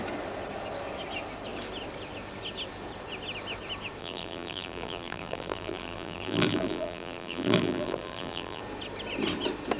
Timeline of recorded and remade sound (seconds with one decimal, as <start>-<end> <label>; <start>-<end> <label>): 0.0-4.0 recorded; 4.0-8.6 remade; 8.6-9.8 recorded